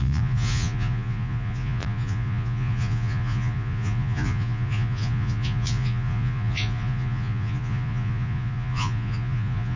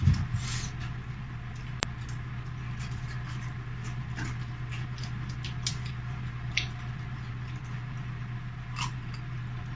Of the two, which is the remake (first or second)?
first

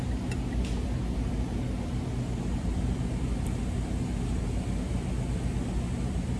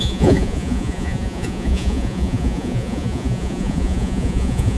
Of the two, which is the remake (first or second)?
second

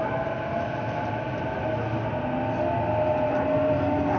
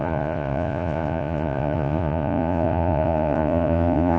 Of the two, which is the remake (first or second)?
second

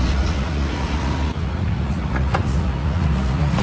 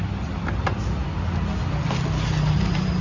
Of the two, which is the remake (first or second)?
first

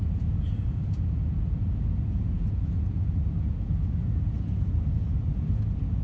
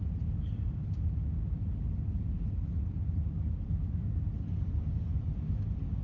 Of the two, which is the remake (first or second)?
first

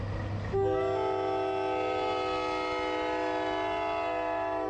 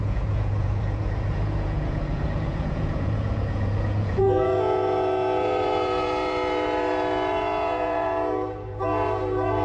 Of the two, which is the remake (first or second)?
second